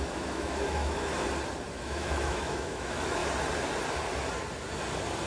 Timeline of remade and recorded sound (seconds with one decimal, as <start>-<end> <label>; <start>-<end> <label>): 0.0-1.1 remade; 1.1-1.7 recorded; 1.7-3.2 remade; 3.2-5.3 recorded